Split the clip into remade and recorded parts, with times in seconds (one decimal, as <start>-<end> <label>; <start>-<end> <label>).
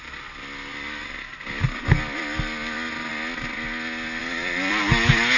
0.0-4.2 recorded; 4.2-4.8 remade; 4.8-5.4 recorded